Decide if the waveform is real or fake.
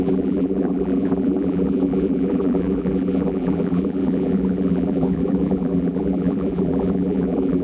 fake